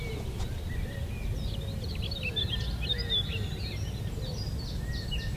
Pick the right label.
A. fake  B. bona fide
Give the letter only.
B